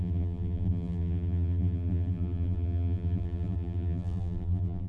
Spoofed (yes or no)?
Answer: yes